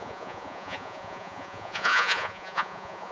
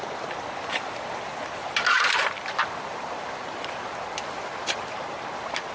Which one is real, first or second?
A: second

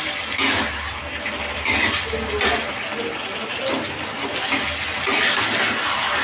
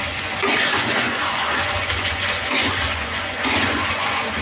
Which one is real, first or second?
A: first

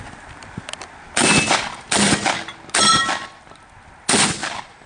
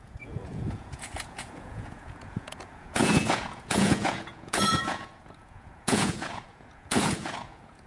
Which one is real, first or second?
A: first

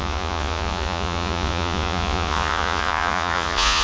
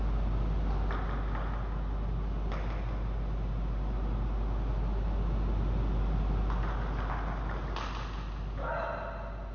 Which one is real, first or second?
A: second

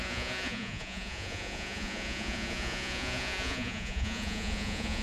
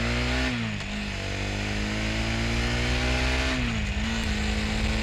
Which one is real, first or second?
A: second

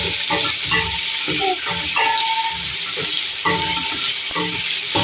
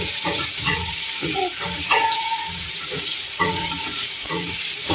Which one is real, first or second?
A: first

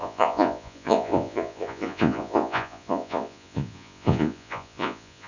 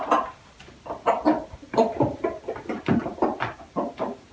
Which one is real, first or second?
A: second